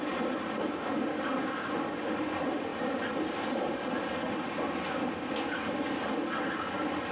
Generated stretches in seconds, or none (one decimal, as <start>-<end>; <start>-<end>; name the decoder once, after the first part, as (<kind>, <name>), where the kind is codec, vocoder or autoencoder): 1.1-2.1 (codec, DAC)